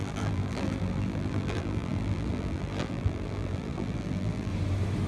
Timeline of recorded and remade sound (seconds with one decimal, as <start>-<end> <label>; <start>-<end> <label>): 0.0-4.5 remade; 4.5-5.1 recorded